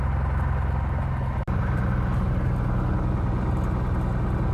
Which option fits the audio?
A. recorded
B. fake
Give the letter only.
A